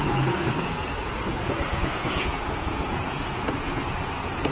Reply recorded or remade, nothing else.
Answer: remade